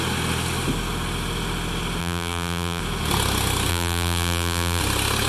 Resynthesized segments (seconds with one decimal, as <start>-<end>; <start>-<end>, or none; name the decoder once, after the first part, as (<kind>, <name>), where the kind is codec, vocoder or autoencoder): 2.0-2.8 (vocoder, BigVGAN v2); 3.7-4.8